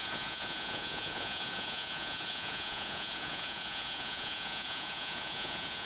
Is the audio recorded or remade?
remade